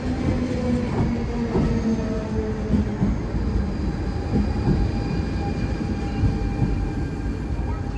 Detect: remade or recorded recorded